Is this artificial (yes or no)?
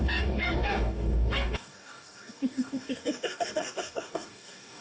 yes